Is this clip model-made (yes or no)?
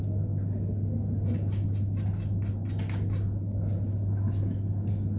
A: no